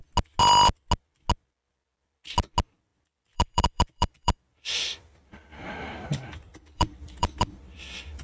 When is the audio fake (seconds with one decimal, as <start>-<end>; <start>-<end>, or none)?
2.9-7.5